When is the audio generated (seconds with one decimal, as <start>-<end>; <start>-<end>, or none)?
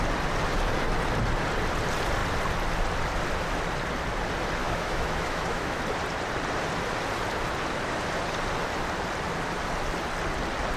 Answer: 4.6-5.8